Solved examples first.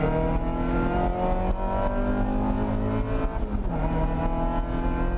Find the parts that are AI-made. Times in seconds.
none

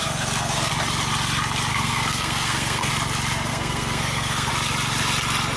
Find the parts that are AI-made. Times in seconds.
0.0-0.7 (codec, SNAC); 1.7-2.9; 3.5-4.5

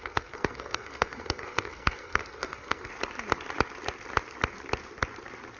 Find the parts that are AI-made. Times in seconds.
0.0-2.9 (codec, SNAC)